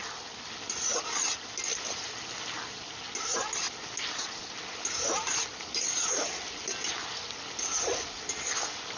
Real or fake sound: real